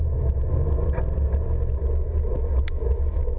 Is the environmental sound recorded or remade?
recorded